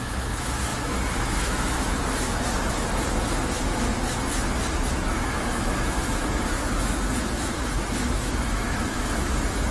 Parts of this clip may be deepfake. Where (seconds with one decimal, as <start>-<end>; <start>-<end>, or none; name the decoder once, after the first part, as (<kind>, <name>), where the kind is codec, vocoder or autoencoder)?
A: 0.0-3.9 (autoencoder, DAC-VAE); 4.9-9.7